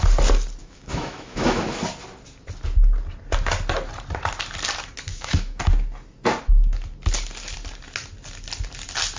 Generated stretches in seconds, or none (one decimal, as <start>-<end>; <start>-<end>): 0.6-1.8; 5.1-5.6